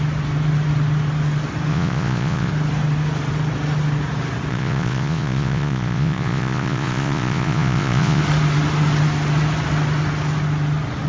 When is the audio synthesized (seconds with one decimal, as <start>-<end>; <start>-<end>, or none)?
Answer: 1.7-2.5; 4.5-8.2

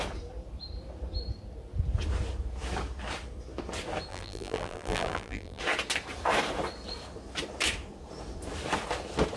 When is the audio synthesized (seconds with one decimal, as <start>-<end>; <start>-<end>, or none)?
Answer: 4.1-5.6

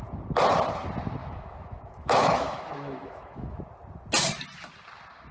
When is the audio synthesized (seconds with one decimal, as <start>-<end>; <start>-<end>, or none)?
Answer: 1.2-3.6

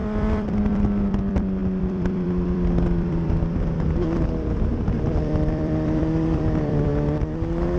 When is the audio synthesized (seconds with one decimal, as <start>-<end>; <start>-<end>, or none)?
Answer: 0.0-6.9